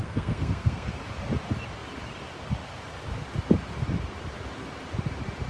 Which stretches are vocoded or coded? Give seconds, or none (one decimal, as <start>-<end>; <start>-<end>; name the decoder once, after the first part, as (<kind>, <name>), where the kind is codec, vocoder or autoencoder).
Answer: 0.0-0.9 (codec, SNAC)